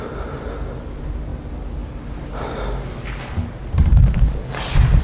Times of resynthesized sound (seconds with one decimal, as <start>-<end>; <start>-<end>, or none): none